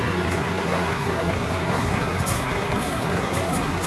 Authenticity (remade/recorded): remade